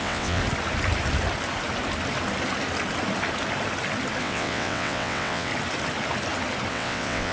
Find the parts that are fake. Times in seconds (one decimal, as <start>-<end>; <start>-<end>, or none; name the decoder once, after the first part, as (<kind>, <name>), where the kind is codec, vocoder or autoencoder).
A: 0.0-0.4 (vocoder, WaveNeXt); 4.2-5.5; 6.7-7.3